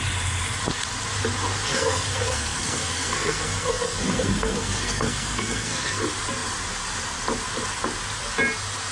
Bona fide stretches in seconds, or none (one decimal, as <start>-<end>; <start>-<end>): 0.0-1.7; 6.0-8.9